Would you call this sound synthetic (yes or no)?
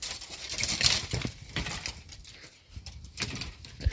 no